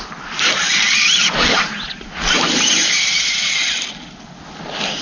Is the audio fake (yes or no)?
no